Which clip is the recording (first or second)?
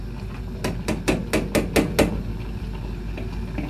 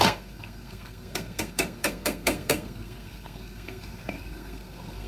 first